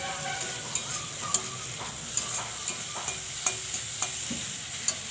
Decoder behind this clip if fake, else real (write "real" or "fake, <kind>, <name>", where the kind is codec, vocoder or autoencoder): real